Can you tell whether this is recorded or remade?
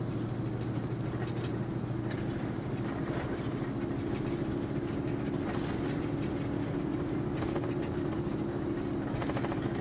recorded